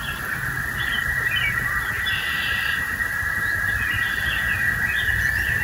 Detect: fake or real real